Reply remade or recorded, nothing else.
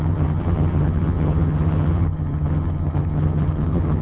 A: remade